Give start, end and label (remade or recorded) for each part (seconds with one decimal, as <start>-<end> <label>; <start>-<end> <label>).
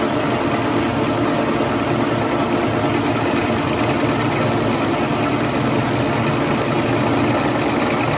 0.0-8.2 recorded